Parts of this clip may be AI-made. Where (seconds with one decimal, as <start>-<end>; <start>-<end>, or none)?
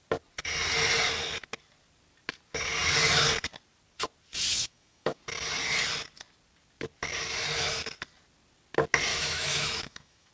4.6-5.2; 9.1-10.3